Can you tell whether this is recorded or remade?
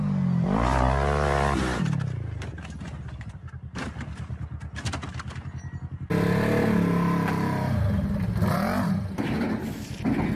recorded